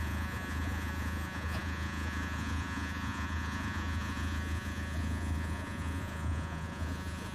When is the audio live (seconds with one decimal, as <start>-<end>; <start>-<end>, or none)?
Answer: none